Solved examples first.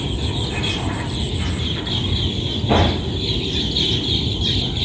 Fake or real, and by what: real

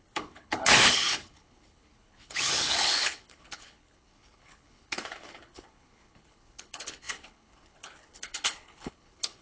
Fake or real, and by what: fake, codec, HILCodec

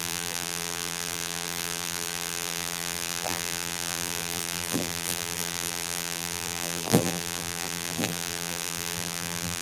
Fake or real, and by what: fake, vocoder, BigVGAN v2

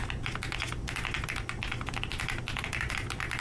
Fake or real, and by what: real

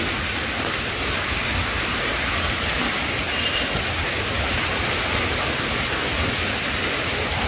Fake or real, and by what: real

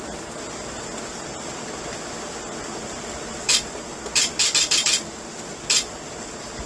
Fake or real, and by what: real